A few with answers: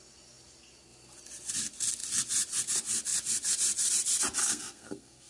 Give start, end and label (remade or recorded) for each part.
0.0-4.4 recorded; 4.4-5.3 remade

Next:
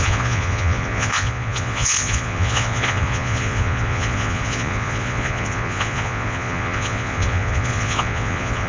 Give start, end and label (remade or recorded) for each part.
0.0-8.7 remade

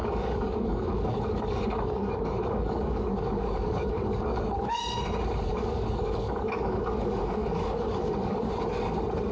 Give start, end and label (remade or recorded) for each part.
0.0-4.8 remade; 4.8-5.5 recorded; 5.5-8.5 remade; 8.5-9.3 recorded